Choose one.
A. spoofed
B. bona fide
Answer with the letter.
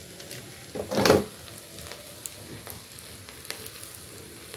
B